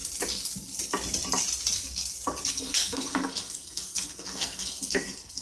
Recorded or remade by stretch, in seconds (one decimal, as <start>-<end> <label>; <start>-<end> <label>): 0.0-2.5 recorded; 2.5-5.4 remade